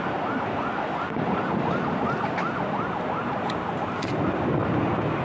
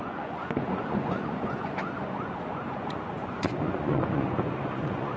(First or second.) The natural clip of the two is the first